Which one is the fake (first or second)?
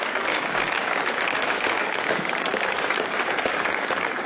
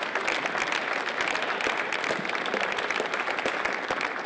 first